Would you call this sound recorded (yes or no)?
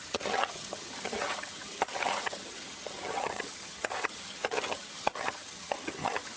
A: no